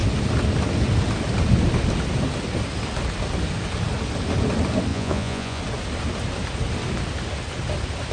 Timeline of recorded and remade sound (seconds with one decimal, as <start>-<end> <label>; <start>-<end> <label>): 0.0-4.9 recorded; 4.9-5.6 remade; 5.6-8.1 recorded